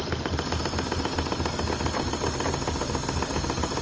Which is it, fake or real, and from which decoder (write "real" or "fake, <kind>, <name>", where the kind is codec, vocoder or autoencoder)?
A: real